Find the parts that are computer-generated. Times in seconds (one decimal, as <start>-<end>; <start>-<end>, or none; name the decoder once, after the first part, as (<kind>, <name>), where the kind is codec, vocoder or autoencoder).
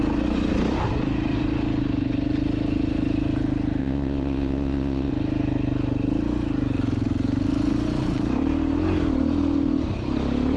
3.8-5.1 (vocoder, Vocos)